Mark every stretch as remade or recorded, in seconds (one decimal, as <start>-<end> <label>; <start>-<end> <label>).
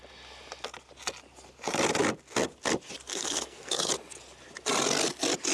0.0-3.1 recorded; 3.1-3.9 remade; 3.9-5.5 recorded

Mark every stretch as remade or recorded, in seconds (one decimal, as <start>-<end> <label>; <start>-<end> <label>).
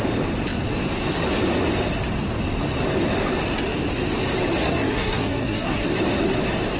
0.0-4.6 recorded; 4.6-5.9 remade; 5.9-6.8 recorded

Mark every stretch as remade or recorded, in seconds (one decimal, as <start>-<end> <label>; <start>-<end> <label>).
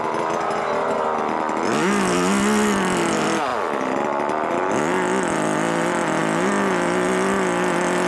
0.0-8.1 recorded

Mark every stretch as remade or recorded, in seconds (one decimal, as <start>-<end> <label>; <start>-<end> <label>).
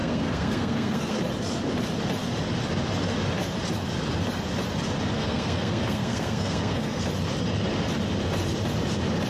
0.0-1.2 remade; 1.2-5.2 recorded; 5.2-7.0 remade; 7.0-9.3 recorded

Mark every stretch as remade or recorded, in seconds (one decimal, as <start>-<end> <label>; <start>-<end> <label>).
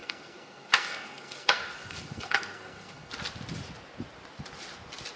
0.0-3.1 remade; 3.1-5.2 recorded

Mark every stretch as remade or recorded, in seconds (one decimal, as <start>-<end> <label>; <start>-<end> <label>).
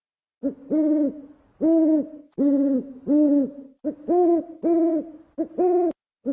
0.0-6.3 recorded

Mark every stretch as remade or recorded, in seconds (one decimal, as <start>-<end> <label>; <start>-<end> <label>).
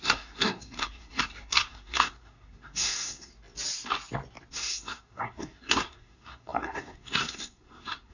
0.0-3.3 remade; 3.3-4.5 recorded; 4.5-8.1 remade